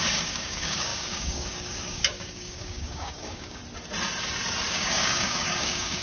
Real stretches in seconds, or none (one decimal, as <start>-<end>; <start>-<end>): 3.6-4.7